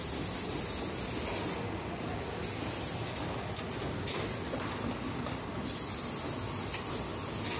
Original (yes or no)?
yes